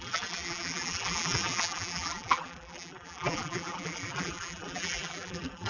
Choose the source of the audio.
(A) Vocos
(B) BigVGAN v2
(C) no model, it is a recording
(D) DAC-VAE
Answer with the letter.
B